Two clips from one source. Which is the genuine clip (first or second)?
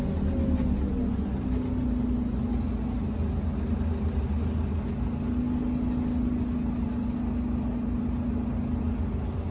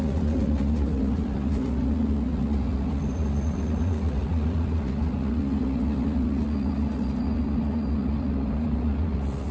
first